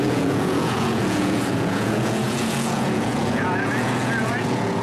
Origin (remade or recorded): remade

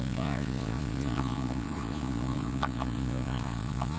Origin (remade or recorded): remade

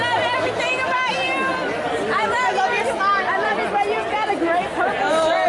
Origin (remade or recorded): recorded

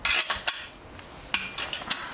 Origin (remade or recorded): recorded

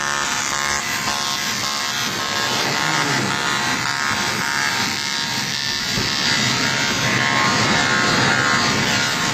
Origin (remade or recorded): recorded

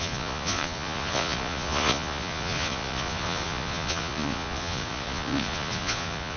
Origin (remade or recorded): remade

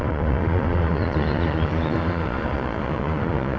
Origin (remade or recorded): remade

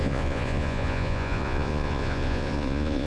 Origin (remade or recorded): remade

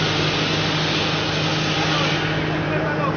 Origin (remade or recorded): recorded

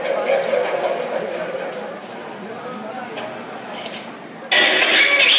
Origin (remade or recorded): recorded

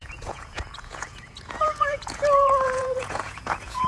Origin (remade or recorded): remade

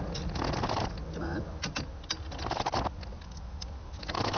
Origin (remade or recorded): recorded